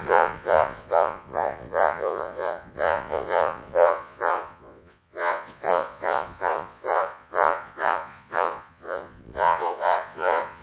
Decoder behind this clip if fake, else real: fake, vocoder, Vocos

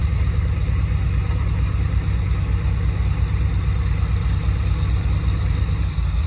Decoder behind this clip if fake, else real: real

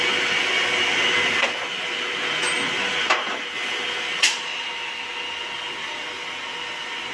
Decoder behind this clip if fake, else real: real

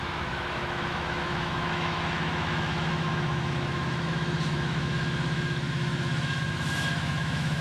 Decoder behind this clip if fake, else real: fake, autoencoder, DAC-VAE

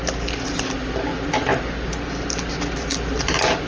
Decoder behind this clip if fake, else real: real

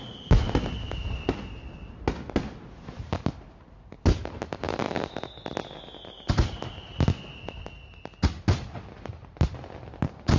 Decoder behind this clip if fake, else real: real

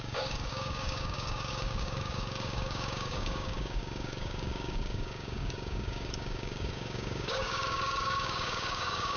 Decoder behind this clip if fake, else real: fake, codec, DAC